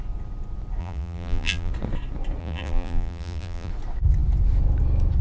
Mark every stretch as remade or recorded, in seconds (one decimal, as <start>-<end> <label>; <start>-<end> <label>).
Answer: 0.0-0.8 recorded; 0.8-1.7 remade; 1.7-2.4 recorded; 2.4-3.7 remade; 3.7-5.2 recorded

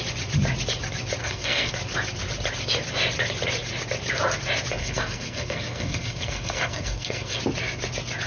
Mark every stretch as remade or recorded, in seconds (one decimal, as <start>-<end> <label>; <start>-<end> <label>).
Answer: 0.0-1.2 recorded; 1.2-1.7 remade; 1.7-4.8 recorded; 4.8-7.4 remade; 7.4-8.3 recorded

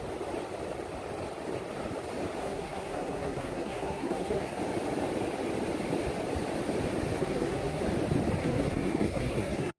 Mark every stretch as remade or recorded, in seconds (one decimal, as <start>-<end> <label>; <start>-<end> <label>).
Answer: 0.0-2.4 recorded; 2.4-4.6 remade; 4.6-7.2 recorded; 7.2-7.8 remade; 7.8-8.4 recorded; 8.4-9.8 remade

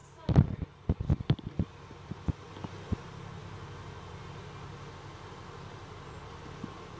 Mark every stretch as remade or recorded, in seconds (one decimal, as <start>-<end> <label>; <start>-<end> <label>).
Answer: 0.0-7.0 recorded